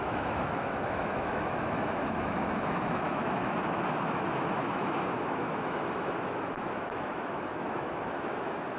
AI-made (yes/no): yes